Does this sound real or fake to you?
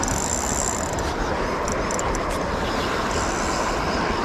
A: real